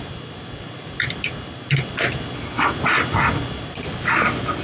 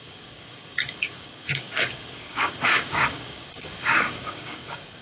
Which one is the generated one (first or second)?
second